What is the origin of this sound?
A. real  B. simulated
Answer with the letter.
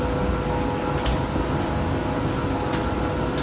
A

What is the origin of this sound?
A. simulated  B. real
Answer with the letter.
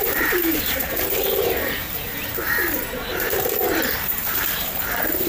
A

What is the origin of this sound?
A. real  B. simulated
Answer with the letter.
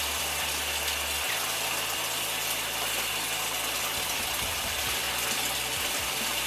A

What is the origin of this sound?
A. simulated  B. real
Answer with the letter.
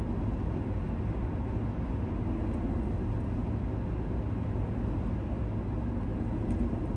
B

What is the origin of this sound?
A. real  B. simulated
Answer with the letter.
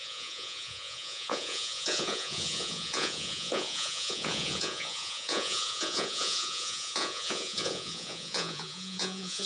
B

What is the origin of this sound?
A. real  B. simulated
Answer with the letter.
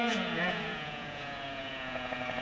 B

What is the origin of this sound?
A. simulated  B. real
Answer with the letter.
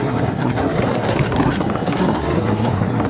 A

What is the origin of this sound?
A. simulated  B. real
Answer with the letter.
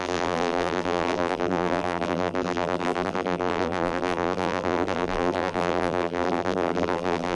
A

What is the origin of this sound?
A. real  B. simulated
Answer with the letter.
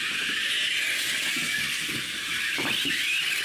A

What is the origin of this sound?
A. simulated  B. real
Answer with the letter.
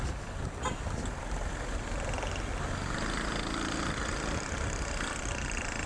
B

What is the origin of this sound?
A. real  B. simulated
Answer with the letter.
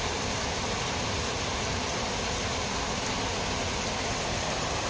A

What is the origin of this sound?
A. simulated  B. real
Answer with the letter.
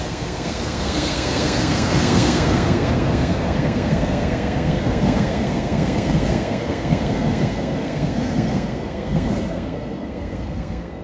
A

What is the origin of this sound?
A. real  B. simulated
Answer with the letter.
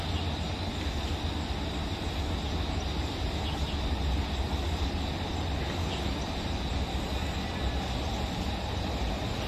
A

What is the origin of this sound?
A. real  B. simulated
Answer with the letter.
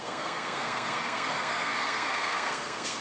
B